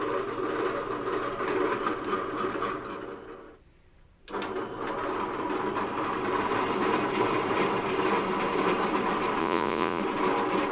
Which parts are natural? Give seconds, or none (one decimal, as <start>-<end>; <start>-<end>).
0.0-9.4; 10.0-10.7